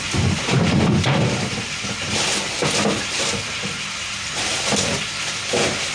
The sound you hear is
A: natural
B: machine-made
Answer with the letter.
A